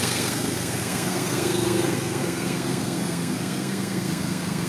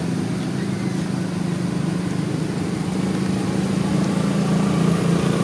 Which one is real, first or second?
second